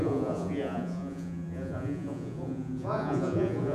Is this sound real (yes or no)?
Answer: no